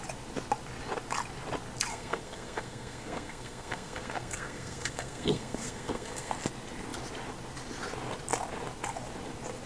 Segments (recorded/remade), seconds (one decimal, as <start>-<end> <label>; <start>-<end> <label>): 0.0-1.9 recorded; 1.9-6.3 remade; 6.3-9.7 recorded